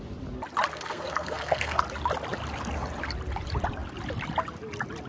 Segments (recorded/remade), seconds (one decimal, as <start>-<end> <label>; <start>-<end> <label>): 0.0-0.7 recorded; 0.7-1.8 remade; 1.8-5.1 recorded